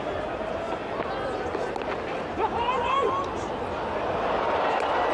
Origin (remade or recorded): recorded